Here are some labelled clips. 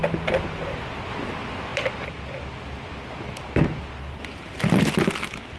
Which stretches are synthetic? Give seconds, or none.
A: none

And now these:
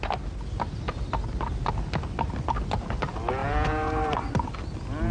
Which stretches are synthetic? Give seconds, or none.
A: 3.4-4.2 (vocoder, BigVGAN v2)

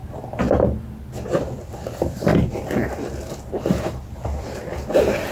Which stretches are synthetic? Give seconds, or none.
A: 1.6-2.3 (vocoder, BigVGAN v2); 3.5-5.3

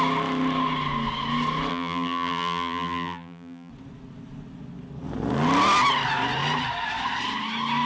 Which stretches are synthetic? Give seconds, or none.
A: 1.7-3.7 (vocoder, BigVGAN v2)

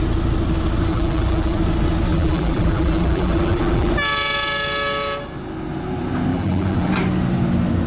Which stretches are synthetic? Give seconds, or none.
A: 0.9-1.6 (vocoder, BigVGAN v2); 2.1-3.9; 6.3-6.9

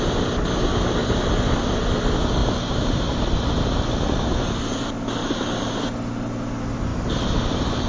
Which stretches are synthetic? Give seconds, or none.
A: 1.0-1.8 (vocoder, BigVGAN v2); 2.4-4.3; 5.2-5.7; 6.9-7.9

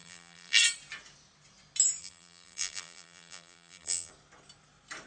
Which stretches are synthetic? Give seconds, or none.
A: 0.0-0.6 (vocoder, BigVGAN v2); 2.0-4.1

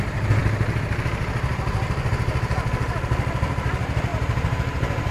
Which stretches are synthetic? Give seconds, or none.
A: 4.1-5.1 (vocoder, BigVGAN v2)